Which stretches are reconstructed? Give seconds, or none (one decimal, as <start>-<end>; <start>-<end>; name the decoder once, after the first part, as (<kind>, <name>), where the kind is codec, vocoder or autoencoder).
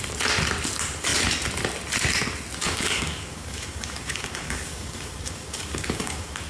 2.6-6.5 (codec, DAC)